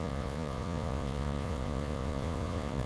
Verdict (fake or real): fake